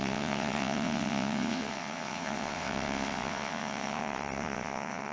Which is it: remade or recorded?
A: remade